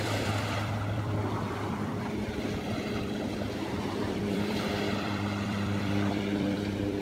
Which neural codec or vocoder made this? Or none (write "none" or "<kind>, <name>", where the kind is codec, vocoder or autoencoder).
vocoder, BigVGAN v2